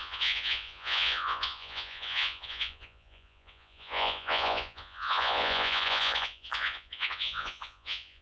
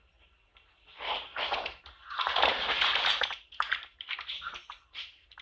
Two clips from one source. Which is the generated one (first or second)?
first